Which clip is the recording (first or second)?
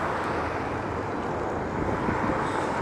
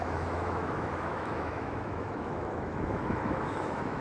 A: first